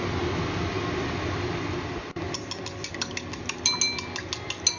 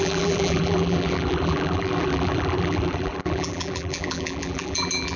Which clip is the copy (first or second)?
second